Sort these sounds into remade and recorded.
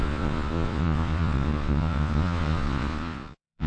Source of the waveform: remade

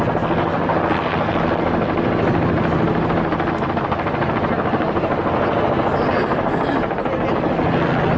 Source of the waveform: recorded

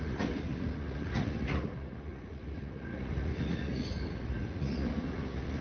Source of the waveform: remade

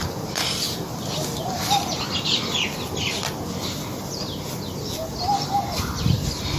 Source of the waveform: recorded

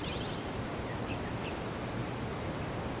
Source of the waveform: recorded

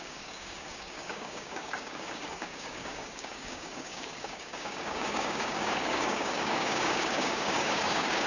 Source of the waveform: remade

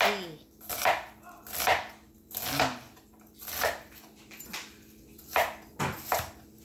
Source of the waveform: recorded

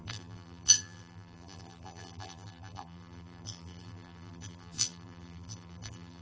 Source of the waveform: remade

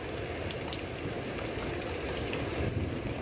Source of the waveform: recorded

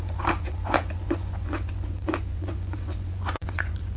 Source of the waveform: remade